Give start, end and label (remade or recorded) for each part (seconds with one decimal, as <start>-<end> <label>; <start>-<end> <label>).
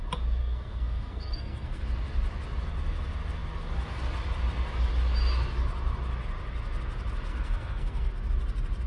0.0-0.4 recorded; 0.4-1.8 remade; 1.8-7.3 recorded; 7.3-8.1 remade; 8.1-8.9 recorded